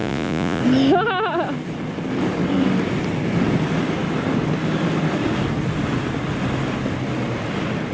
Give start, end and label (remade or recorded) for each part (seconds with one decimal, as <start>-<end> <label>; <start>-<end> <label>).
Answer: 0.0-0.6 remade; 0.6-7.9 recorded